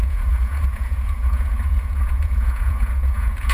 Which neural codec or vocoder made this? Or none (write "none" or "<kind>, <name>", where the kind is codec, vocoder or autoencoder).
vocoder, Vocos